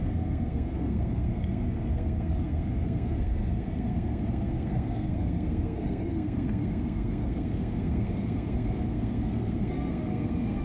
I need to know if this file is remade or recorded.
remade